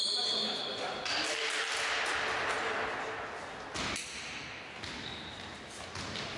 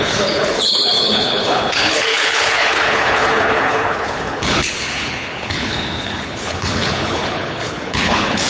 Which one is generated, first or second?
second